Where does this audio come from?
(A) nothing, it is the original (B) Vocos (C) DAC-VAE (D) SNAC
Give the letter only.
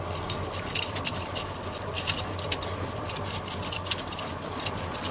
A